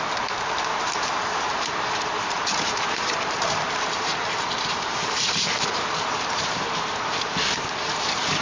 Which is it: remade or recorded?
remade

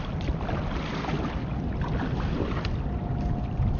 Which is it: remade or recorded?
recorded